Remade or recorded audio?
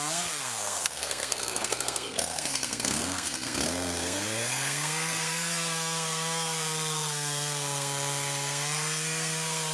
remade